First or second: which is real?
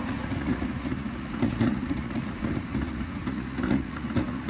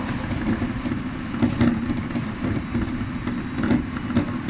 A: second